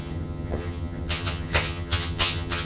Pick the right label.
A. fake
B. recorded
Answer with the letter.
A